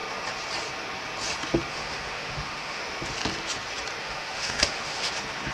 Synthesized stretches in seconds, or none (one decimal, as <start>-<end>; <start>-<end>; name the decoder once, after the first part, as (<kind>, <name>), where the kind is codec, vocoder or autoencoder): 1.7-2.8 (autoencoder, DAC-VAE); 4.0-5.1